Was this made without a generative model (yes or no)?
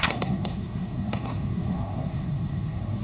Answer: no